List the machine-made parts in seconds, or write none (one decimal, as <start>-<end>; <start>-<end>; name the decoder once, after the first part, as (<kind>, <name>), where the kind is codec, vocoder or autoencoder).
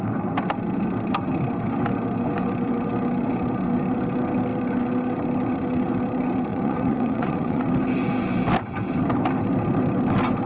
6.5-7.6 (vocoder, Vocos)